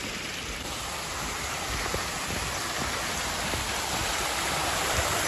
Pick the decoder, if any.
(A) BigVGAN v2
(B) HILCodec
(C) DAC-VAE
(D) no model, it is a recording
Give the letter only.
D